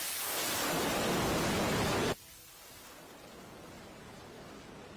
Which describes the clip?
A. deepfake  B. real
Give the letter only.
B